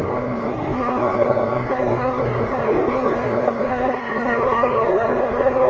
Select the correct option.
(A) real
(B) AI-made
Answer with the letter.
B